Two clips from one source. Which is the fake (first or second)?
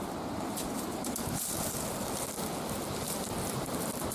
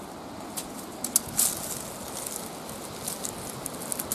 first